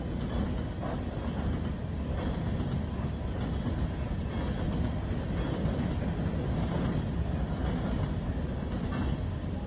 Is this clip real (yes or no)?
yes